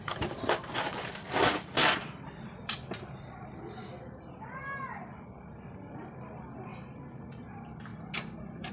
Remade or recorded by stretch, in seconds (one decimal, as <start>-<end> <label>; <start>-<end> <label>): 0.0-5.0 remade; 5.0-6.7 recorded; 6.7-7.2 remade; 7.2-8.7 recorded